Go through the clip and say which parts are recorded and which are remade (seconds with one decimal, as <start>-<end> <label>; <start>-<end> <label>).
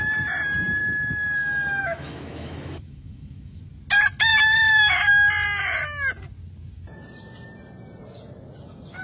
0.0-0.8 recorded; 0.8-3.6 remade; 3.6-4.3 recorded; 4.3-5.1 remade; 5.1-9.0 recorded